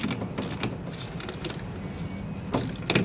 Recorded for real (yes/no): yes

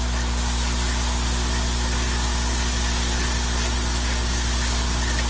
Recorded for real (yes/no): yes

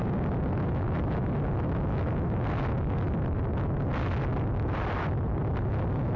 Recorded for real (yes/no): yes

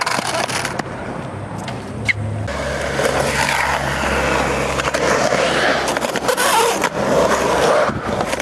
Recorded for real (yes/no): yes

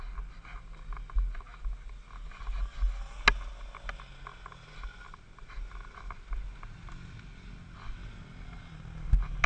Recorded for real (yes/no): yes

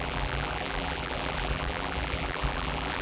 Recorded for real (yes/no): no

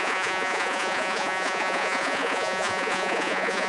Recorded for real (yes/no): no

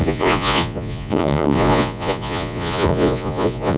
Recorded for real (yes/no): no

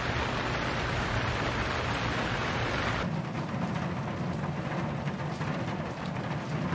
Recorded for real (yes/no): no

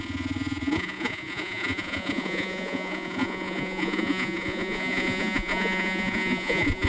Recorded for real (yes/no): no